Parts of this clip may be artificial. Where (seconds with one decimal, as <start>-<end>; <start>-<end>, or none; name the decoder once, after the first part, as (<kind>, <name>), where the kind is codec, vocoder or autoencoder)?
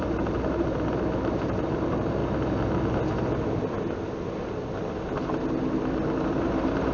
0.0-2.2 (vocoder, BigVGAN v2); 6.3-6.9